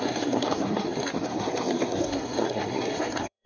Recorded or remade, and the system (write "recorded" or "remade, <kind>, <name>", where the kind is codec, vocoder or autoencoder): remade, codec, SNAC